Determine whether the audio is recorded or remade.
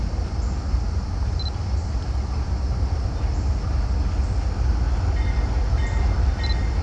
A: recorded